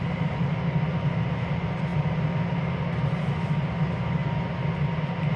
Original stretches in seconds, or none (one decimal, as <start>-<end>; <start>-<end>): 0.0-5.4